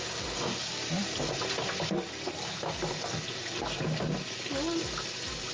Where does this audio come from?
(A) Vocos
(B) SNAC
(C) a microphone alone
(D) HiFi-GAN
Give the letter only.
C